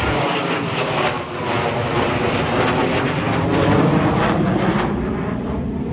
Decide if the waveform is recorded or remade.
recorded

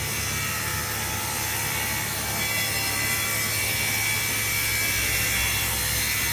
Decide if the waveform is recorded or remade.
recorded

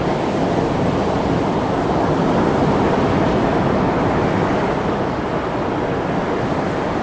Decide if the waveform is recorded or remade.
recorded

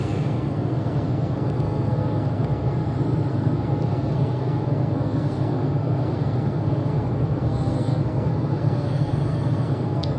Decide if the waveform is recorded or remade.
remade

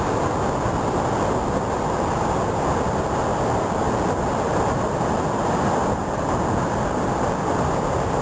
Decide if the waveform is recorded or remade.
recorded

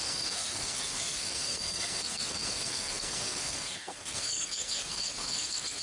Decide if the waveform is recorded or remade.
remade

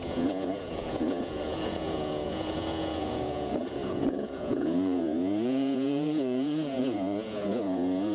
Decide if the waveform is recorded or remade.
remade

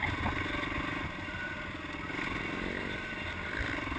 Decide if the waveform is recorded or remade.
recorded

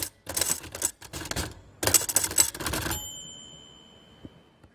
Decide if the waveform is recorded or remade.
recorded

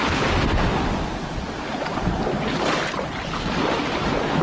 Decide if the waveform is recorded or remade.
recorded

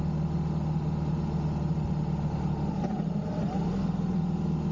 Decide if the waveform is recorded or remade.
recorded